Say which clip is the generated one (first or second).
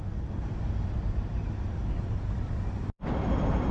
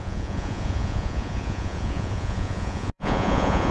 second